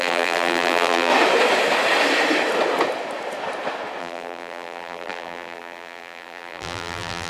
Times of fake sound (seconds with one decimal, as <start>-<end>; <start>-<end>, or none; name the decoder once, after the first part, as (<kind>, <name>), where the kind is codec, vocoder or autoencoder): 0.0-1.1 (vocoder, BigVGAN v2); 4.0-7.3